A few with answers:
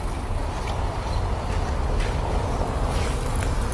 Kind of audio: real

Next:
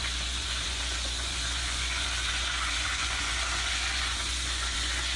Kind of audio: fake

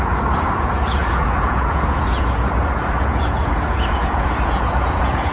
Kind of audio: fake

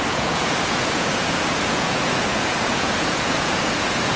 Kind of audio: fake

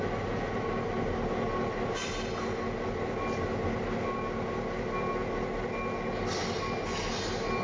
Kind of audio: real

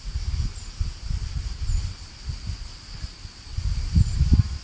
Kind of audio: real